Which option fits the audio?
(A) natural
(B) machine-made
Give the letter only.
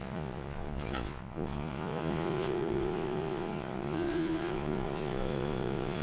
B